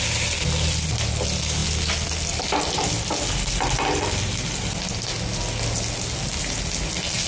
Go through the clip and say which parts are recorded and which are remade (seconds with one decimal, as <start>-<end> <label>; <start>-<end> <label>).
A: 0.0-7.3 recorded